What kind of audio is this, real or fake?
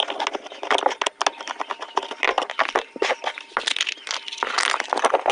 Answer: real